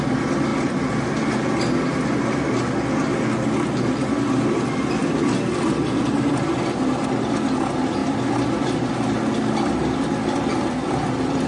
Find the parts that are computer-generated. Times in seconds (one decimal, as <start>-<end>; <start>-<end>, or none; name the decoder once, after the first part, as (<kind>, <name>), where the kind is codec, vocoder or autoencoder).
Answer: none